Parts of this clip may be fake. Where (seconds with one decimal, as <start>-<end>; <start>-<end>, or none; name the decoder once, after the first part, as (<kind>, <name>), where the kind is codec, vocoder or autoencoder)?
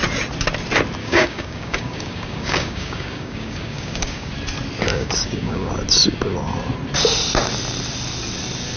1.0-4.3 (codec, DAC); 4.9-5.7